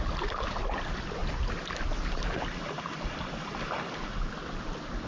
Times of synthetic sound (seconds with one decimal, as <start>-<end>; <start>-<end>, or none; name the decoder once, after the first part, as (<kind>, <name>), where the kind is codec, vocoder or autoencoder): none